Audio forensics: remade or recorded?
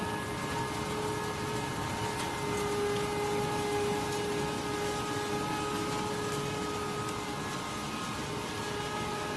recorded